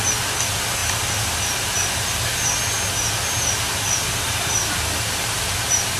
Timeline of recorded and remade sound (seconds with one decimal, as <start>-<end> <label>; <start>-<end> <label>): 0.0-6.0 recorded